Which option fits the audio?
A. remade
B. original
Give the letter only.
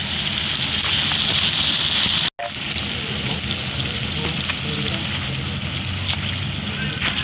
B